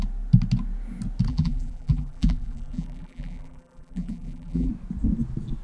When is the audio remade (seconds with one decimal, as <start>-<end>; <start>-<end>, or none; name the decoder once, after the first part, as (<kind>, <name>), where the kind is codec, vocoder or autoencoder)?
1.3-4.7 (vocoder, BigVGAN v2)